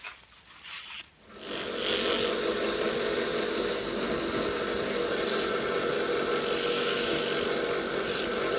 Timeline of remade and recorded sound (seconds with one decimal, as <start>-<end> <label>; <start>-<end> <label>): 0.0-6.7 recorded; 6.7-7.2 remade; 7.2-8.6 recorded